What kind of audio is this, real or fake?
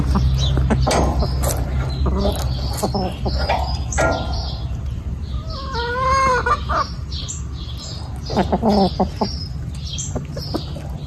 real